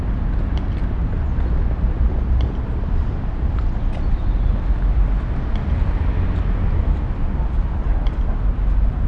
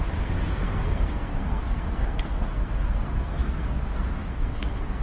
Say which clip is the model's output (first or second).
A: second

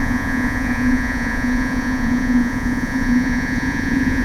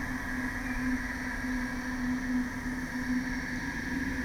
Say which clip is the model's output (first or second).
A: first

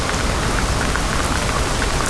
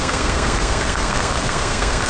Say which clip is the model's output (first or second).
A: second